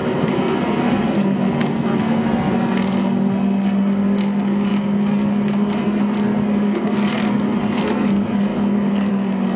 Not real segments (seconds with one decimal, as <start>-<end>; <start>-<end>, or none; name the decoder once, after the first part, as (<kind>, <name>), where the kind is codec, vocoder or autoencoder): 0.0-9.6 (codec, SNAC)